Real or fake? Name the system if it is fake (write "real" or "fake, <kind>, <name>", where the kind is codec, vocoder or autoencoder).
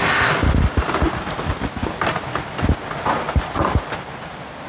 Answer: real